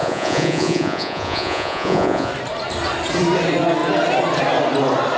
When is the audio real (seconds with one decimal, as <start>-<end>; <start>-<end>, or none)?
2.3-5.2